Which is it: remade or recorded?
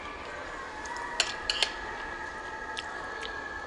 recorded